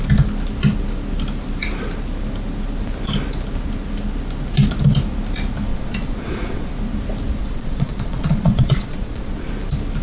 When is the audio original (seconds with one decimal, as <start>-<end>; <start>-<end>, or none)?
0.0-5.7; 6.7-7.4; 9.5-10.0

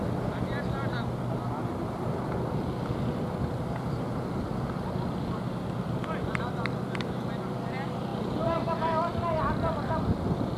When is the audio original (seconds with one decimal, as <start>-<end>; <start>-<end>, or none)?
0.0-8.1; 9.1-10.6

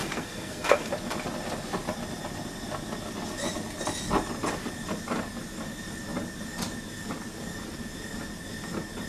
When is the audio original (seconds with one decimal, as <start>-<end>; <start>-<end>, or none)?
0.9-9.1

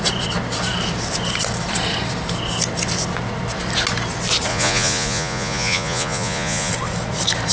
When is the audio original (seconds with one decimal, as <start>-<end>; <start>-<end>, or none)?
0.0-4.5; 6.7-7.5

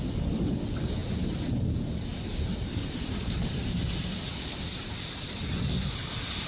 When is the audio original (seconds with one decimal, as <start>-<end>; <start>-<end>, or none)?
0.0-1.0; 4.3-4.7; 5.5-6.5

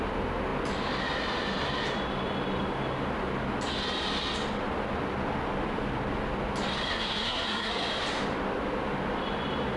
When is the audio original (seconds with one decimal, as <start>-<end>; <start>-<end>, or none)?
0.0-6.9; 7.7-9.8